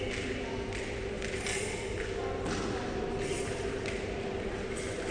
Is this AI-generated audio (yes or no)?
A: no